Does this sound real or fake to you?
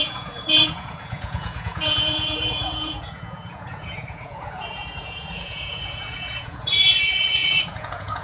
fake